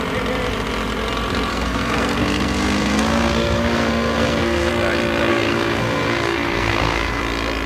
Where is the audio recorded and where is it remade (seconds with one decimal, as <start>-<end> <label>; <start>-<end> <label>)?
0.0-1.5 recorded; 1.5-4.7 remade; 4.7-5.3 recorded; 5.3-7.2 remade; 7.2-7.7 recorded